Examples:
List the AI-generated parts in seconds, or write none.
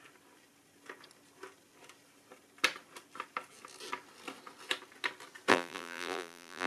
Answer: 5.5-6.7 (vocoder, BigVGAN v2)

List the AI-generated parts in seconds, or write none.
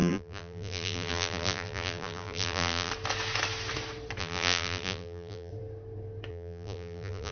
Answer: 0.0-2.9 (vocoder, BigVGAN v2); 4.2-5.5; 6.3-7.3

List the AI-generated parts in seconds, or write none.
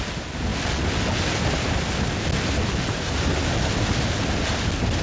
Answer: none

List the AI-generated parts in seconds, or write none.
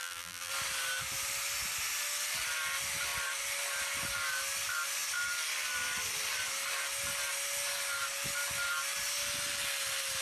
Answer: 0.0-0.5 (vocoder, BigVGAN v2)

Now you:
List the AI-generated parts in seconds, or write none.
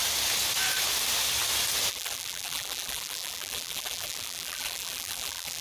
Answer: 1.9-5.6 (vocoder, BigVGAN v2)